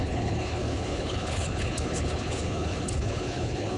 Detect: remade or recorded remade